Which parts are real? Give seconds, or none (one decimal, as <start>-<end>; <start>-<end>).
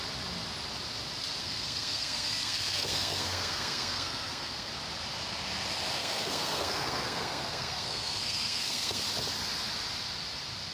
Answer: 0.0-1.4; 4.7-6.0; 9.0-10.7